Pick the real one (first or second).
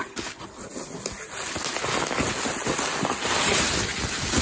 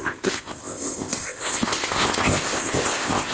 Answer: first